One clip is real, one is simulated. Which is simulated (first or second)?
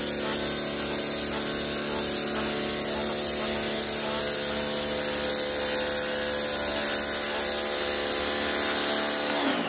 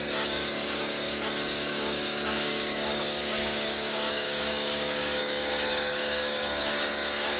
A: second